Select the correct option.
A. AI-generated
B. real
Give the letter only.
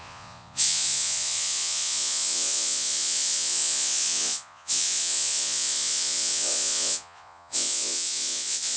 A